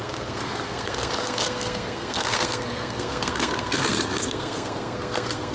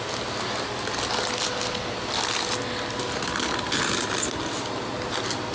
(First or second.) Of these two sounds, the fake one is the first